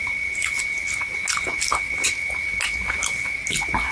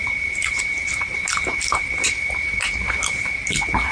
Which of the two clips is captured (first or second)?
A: first